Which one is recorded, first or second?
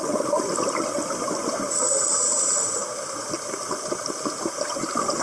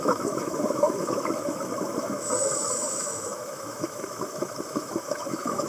first